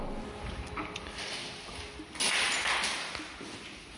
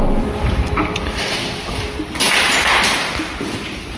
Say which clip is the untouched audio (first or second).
first